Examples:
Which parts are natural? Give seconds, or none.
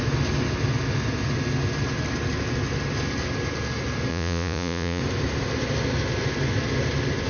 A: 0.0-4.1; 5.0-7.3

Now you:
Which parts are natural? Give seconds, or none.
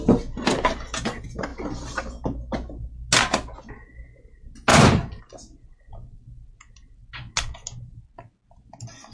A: 0.0-9.1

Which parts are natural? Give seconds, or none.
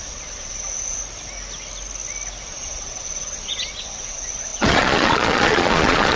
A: 1.0-2.4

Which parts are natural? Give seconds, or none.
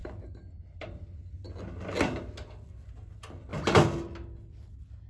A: 0.0-5.1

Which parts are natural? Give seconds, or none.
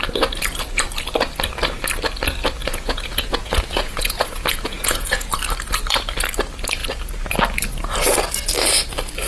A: 0.0-2.6; 5.3-9.3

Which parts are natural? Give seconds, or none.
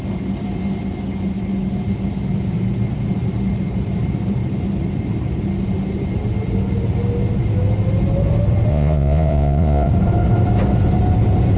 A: 0.0-8.7; 9.9-11.6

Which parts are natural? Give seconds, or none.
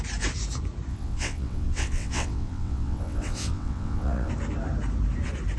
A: 0.0-0.9; 4.3-5.6